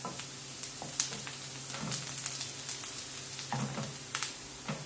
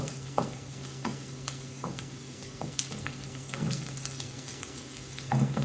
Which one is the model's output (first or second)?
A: second